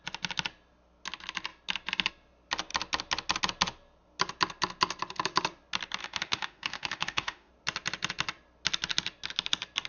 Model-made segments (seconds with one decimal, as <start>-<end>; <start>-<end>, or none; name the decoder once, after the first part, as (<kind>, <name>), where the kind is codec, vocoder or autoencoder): 6.0-7.5 (autoencoder, DAC-VAE)